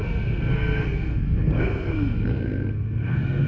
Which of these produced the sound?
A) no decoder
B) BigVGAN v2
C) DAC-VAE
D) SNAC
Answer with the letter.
D